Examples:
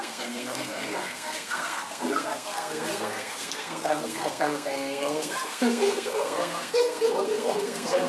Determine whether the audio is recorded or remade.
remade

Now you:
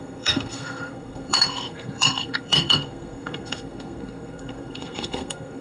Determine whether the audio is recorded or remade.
remade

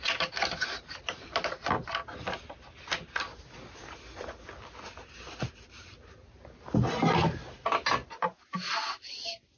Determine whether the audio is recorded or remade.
recorded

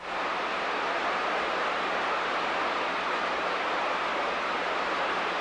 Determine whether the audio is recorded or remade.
recorded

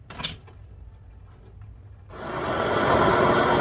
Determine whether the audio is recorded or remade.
recorded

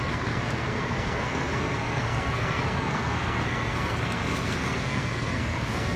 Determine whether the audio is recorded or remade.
remade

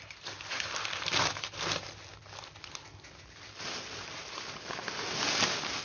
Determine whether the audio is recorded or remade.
recorded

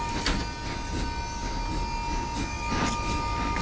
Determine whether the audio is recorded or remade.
recorded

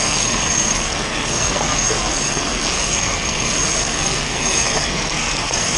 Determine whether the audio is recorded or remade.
remade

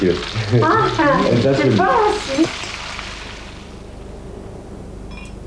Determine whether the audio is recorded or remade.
recorded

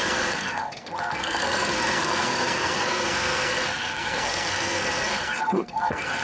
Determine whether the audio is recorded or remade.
remade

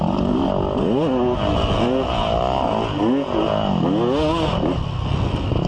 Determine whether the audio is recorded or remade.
recorded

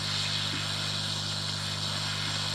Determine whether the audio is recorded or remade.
recorded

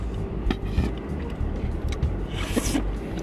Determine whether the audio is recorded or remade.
recorded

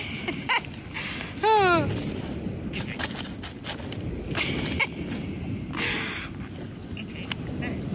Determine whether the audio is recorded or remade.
recorded